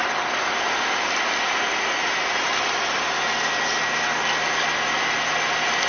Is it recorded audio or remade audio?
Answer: recorded